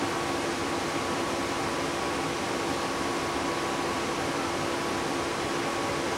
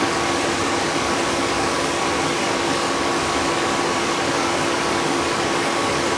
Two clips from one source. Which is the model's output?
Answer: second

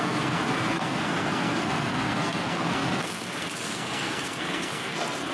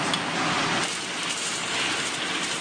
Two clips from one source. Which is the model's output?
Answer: first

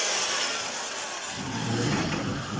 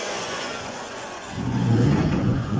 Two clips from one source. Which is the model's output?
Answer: second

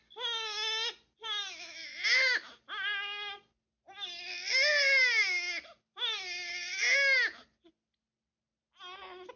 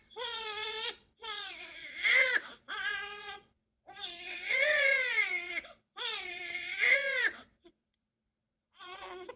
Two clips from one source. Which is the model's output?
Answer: second